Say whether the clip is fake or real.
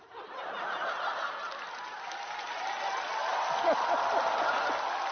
real